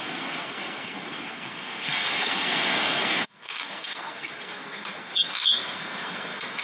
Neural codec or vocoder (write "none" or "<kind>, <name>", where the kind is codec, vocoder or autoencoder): codec, SNAC